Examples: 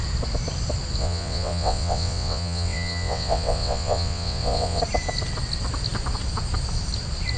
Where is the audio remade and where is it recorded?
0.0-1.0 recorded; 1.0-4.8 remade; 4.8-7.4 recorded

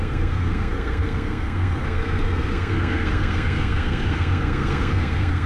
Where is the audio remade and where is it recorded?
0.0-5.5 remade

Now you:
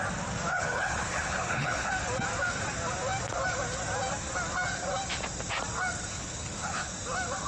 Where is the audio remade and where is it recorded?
0.0-0.5 recorded; 0.5-1.9 remade; 1.9-6.1 recorded; 6.1-6.9 remade; 6.9-7.5 recorded